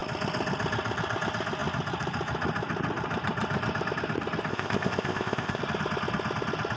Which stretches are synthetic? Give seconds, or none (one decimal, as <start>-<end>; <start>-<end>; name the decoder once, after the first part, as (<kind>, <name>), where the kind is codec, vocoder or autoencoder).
4.5-5.6 (codec, ZipCodec)